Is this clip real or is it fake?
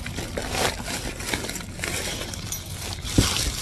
real